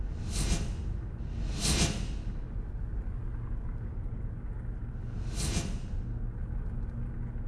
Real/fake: real